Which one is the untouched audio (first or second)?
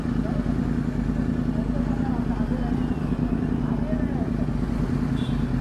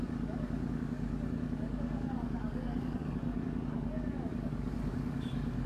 first